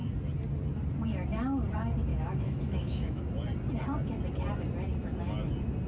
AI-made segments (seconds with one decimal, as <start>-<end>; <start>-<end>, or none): 2.1-3.3